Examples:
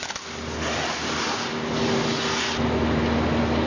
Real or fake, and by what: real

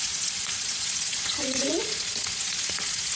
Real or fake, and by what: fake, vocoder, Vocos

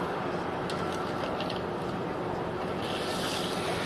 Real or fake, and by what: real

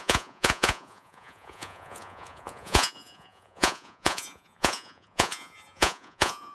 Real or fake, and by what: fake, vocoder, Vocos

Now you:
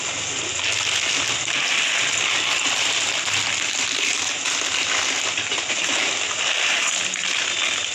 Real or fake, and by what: real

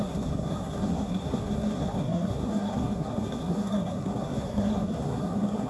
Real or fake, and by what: fake, codec, SNAC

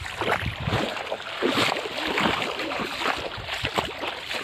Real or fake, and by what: real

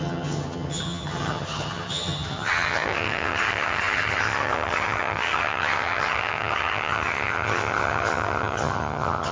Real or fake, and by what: fake, vocoder, HiFi-GAN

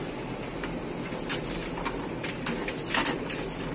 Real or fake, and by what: real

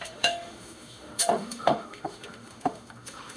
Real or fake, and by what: fake, autoencoder, DAC-VAE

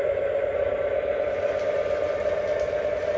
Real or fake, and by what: real